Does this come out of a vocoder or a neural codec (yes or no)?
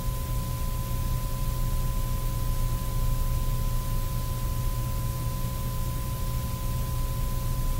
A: no